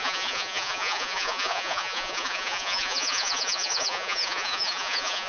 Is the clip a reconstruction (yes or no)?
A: yes